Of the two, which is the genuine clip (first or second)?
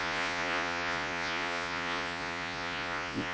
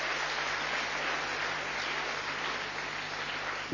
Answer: second